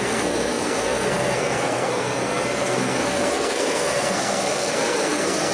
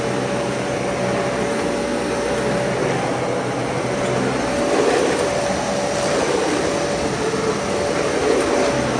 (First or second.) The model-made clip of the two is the first